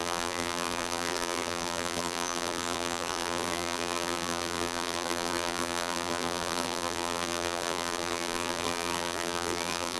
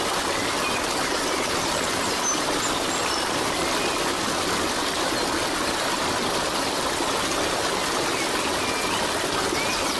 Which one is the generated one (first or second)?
first